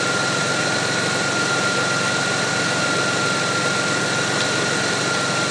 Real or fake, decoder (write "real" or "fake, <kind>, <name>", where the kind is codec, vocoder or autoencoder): real